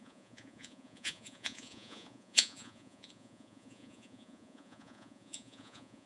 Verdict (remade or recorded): remade